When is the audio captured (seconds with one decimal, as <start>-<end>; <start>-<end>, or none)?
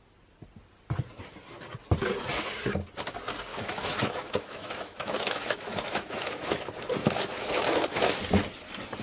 0.0-3.5; 6.6-7.0; 8.2-9.0